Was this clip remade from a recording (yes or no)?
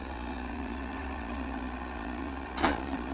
yes